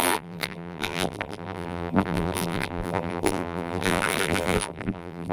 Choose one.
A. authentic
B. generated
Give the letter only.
B